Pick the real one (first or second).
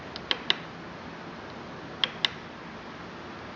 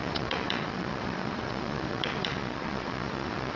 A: first